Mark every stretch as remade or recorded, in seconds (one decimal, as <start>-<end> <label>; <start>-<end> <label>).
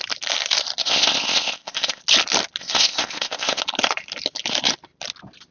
0.0-0.8 recorded; 0.8-2.0 remade; 2.0-2.6 recorded; 2.6-3.6 remade; 3.6-5.5 recorded